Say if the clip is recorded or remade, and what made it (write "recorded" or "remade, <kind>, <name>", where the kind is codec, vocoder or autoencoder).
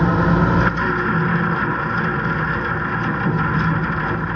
recorded